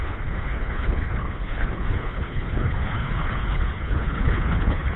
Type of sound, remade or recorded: remade